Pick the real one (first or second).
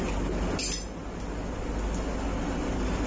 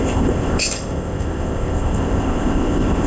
first